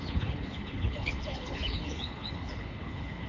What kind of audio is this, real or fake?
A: fake